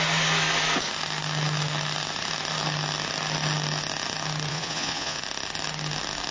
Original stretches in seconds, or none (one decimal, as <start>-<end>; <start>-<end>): 0.0-4.5; 5.2-6.3